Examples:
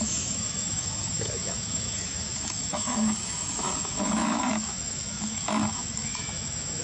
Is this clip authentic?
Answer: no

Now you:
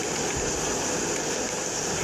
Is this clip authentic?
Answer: yes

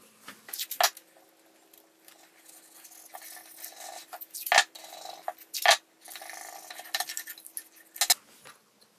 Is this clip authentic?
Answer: yes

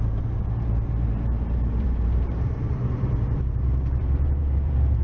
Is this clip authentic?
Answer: no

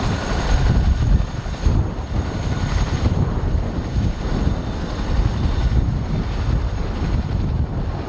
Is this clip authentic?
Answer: yes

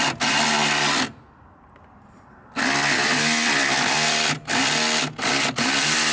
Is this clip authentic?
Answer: yes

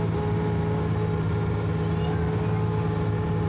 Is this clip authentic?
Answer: yes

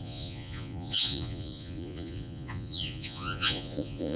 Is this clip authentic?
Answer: no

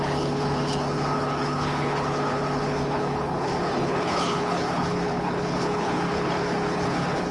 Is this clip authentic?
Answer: no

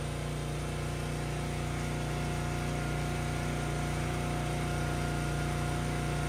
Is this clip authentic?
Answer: yes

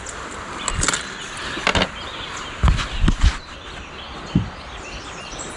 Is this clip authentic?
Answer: yes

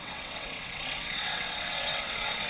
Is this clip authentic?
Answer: no